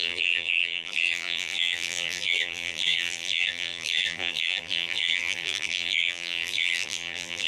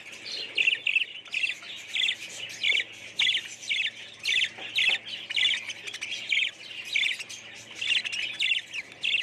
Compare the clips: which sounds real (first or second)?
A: second